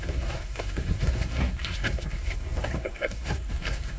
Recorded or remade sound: remade